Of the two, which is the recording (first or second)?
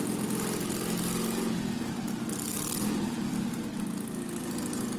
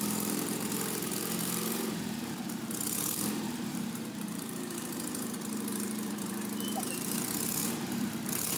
first